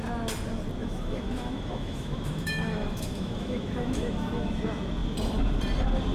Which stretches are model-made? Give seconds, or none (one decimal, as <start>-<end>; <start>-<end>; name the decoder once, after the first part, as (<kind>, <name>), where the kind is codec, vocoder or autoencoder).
0.8-4.5 (autoencoder, DAC-VAE)